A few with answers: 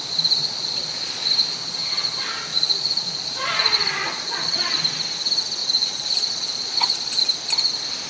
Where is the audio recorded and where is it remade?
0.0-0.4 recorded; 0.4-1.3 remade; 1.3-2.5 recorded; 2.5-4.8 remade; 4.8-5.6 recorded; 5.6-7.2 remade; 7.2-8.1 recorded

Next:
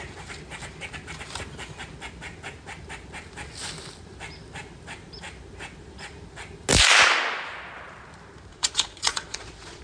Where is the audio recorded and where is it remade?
0.0-8.5 recorded; 8.5-9.8 remade